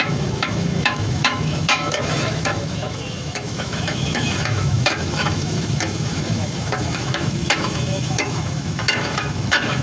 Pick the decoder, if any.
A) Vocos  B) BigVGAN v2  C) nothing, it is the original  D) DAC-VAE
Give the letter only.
D